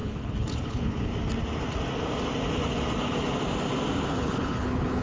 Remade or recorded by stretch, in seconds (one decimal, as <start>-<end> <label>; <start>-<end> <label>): 0.0-1.1 remade; 1.1-4.1 recorded; 4.1-5.0 remade